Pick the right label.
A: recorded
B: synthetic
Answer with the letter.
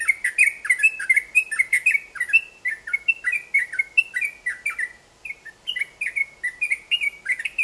A